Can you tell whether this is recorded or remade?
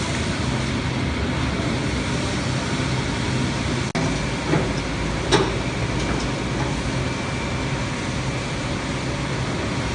recorded